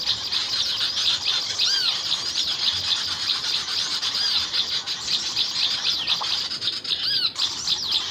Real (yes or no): yes